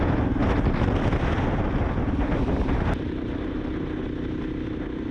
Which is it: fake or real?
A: real